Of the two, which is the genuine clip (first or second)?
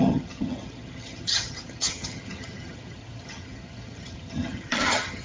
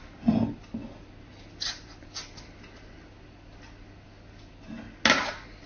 second